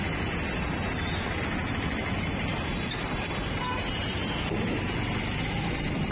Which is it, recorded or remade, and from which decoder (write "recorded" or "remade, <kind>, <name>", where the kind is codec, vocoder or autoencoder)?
recorded